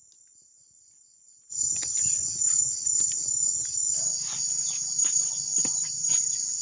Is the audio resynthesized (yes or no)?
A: no